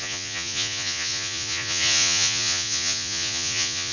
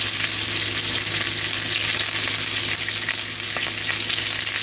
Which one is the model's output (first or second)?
first